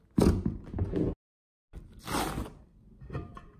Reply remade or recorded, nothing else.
recorded